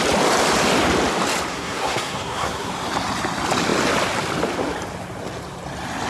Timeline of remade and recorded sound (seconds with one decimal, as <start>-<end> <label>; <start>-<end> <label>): 0.0-1.5 recorded; 1.5-2.7 remade; 2.7-6.1 recorded